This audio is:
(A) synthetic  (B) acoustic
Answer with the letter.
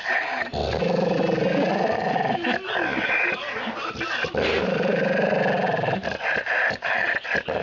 B